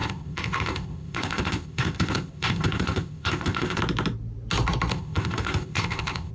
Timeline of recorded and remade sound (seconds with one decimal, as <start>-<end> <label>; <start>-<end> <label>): 0.0-3.8 remade; 3.8-4.9 recorded; 4.9-6.3 remade